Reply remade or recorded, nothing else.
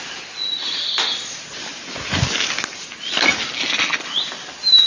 recorded